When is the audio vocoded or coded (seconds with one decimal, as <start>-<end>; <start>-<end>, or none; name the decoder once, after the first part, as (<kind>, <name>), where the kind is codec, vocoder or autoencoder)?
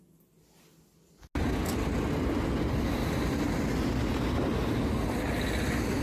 none